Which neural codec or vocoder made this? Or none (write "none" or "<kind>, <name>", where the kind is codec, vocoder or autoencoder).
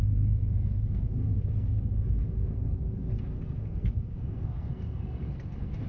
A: codec, SNAC